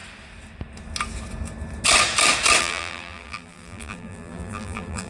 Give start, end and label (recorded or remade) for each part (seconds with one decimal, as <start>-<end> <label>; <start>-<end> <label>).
0.0-2.6 recorded; 2.6-5.1 remade